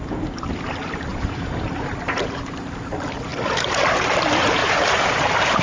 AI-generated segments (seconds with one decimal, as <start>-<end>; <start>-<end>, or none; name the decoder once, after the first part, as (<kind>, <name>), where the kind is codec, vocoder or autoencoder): 1.1-2.0 (vocoder, BigVGAN v2); 4.6-5.6